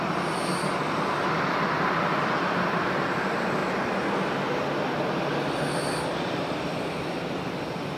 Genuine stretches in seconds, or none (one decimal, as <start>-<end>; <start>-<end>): 0.0-8.0